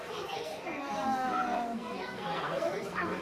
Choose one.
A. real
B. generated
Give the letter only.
B